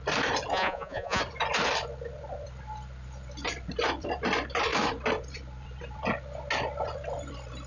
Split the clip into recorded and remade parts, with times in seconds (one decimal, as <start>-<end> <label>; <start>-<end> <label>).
0.0-0.5 recorded; 0.5-1.2 remade; 1.2-7.7 recorded